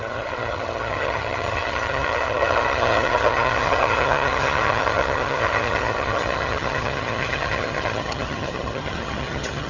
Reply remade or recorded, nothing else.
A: remade